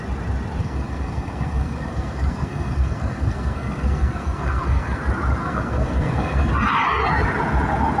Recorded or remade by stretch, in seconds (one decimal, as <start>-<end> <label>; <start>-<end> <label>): 0.0-0.6 recorded; 0.6-5.0 remade; 5.0-5.4 recorded; 5.4-6.5 remade; 6.5-8.0 recorded